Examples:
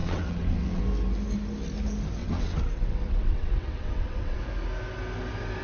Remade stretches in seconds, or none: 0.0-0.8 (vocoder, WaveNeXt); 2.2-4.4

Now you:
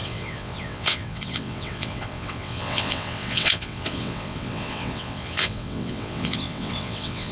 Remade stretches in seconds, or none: 0.0-7.3 (vocoder, WaveNeXt)

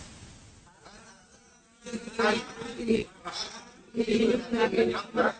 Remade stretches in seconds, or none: 2.7-3.9 (vocoder, WaveNeXt)

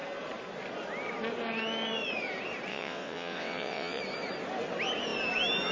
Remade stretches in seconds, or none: 2.7-4.0 (vocoder, WaveNeXt)

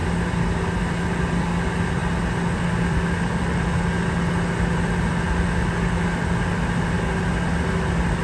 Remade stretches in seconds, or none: none

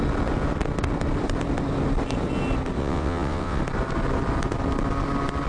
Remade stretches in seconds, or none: 2.8-3.6 (vocoder, WaveNeXt)

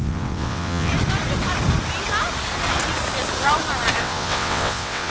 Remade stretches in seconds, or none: 0.0-0.9 (vocoder, WaveNeXt); 4.0-5.1